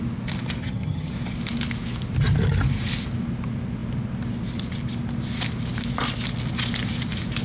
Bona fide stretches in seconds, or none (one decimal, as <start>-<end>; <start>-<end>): 0.0-0.6; 1.1-7.4

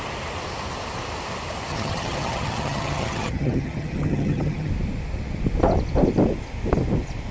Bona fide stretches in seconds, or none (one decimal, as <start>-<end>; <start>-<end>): 0.0-1.7; 4.7-7.3

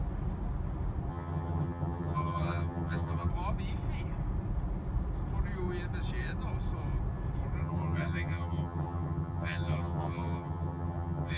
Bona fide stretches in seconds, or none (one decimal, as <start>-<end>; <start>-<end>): 0.0-1.1; 3.3-7.6

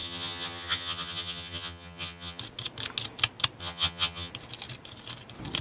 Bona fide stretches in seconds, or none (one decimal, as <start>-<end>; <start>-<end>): 2.4-3.6; 4.3-5.6

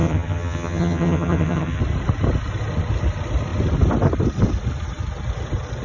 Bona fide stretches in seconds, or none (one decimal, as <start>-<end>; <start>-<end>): 1.8-5.8

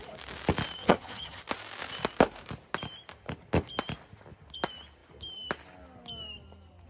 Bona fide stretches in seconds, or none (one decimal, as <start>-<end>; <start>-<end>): 0.0-0.8; 1.4-6.9